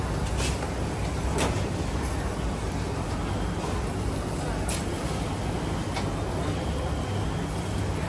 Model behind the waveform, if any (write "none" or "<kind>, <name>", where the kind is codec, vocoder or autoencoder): none